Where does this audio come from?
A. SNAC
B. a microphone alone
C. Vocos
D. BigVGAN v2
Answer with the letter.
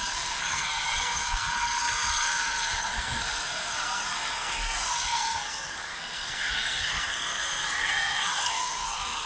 A